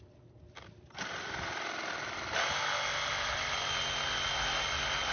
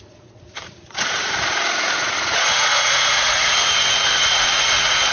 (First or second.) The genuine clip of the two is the first